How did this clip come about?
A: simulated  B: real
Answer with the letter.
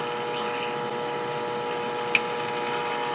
B